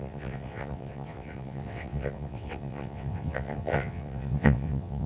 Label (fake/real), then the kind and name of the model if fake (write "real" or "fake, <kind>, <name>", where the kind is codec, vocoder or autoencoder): fake, vocoder, WaveNeXt